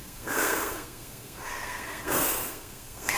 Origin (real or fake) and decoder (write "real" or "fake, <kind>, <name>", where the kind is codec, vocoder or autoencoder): fake, codec, SNAC